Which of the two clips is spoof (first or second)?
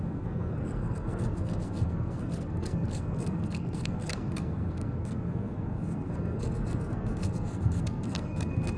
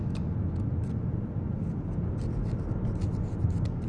first